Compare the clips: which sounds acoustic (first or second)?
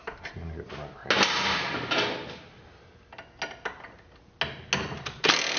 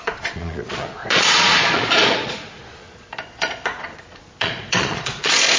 first